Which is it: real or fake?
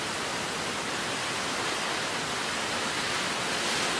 real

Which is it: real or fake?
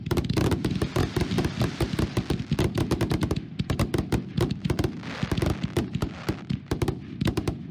real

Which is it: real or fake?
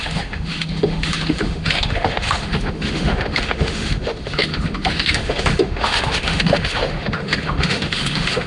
fake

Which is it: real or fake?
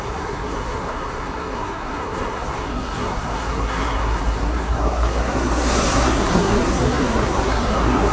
fake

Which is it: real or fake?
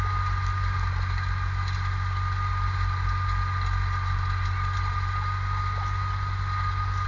real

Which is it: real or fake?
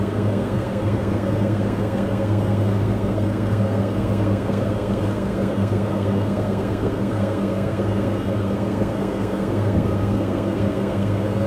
fake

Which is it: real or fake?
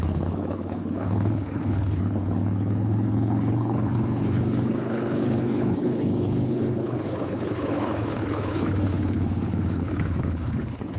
fake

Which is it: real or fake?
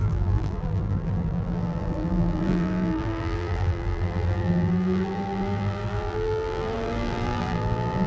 fake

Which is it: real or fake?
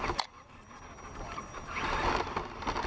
real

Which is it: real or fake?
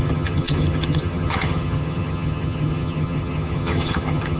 fake